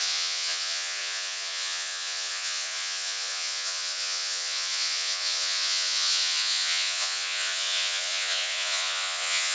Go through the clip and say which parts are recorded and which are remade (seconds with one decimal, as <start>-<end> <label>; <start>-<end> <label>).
0.0-9.5 remade